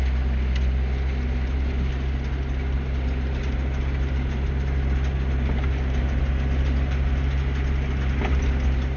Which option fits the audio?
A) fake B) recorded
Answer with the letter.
B